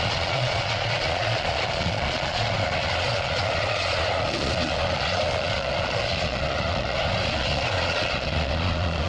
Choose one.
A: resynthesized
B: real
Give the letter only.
A